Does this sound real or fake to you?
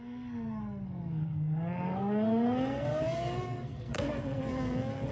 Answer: fake